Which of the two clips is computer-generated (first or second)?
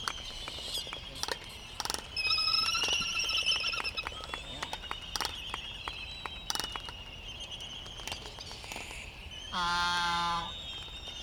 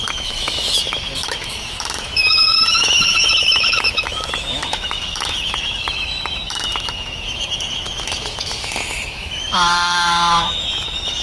second